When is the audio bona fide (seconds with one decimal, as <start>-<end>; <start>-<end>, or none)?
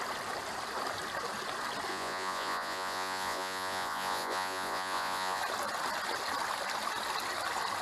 0.0-1.9; 5.4-7.8